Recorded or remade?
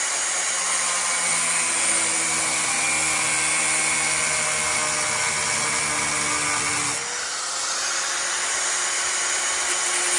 recorded